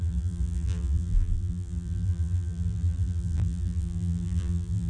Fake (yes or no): yes